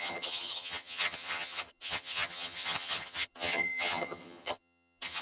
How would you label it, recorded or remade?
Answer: remade